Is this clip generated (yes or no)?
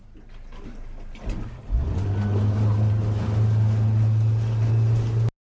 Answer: no